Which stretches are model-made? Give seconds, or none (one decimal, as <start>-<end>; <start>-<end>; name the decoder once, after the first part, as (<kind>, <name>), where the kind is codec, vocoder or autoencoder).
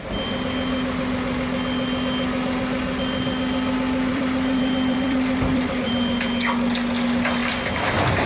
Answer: 4.1-5.9 (vocoder, BigVGAN v2); 7.4-8.3